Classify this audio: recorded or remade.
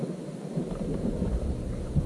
remade